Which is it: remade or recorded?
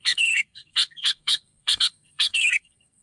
remade